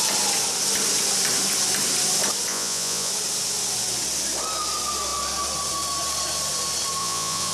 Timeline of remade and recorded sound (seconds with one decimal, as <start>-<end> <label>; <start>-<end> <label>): 0.0-2.5 recorded; 2.5-3.1 remade; 3.1-7.0 recorded; 7.0-7.5 remade